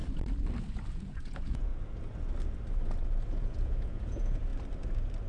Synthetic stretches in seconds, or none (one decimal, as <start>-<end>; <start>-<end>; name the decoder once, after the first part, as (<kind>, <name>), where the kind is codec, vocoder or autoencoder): 0.9-1.7 (vocoder, Vocos); 3.3-4.5